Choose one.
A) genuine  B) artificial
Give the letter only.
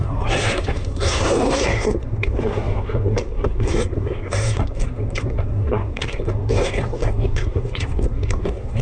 B